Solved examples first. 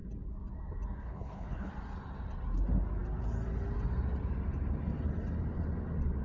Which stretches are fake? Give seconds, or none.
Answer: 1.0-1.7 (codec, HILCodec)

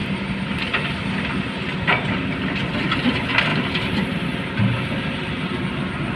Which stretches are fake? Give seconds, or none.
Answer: none

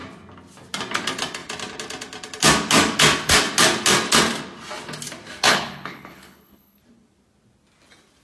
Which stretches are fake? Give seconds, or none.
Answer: 5.5-6.8 (codec, HILCodec)

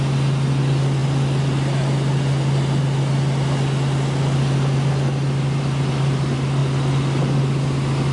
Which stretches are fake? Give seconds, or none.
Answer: none

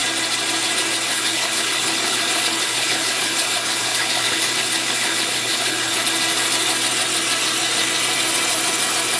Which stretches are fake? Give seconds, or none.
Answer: 1.1-6.0 (codec, HILCodec)

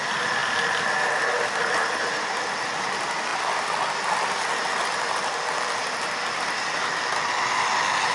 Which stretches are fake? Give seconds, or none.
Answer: none